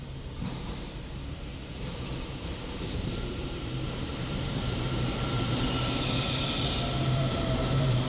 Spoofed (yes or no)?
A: yes